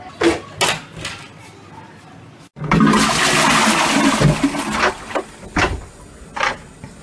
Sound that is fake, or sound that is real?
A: real